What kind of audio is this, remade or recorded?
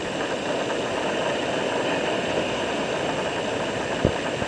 recorded